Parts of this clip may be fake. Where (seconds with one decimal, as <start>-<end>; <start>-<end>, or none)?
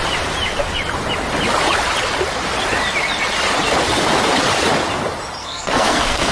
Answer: 5.4-6.3